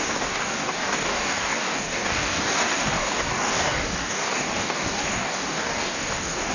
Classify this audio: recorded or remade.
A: remade